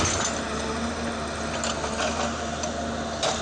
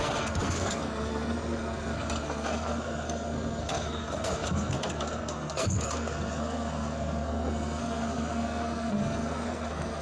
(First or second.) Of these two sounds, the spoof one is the second